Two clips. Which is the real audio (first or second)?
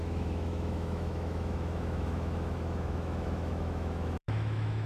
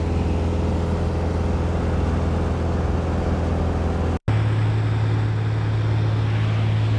second